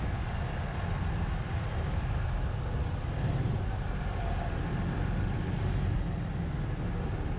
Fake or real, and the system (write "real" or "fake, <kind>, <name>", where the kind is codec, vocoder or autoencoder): real